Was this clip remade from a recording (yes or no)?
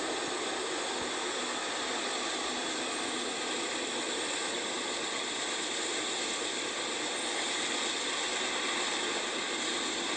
no